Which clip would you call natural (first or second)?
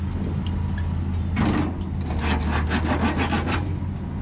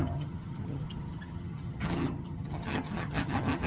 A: first